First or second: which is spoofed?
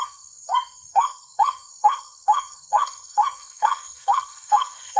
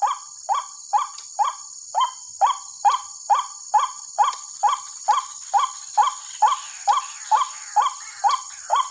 first